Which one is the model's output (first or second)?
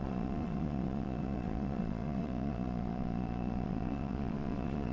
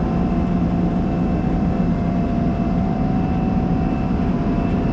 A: first